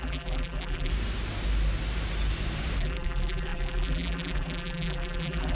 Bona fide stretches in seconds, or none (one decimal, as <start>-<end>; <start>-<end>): 0.9-2.8

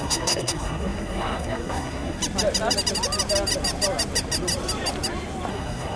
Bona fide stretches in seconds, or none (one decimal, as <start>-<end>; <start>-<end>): 2.2-5.5

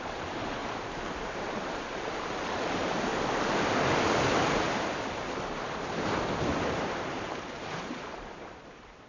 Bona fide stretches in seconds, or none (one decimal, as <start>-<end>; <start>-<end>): 0.6-1.1; 3.1-5.1

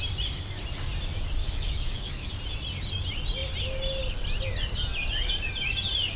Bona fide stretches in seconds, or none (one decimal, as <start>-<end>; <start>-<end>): 0.0-1.4; 2.3-6.2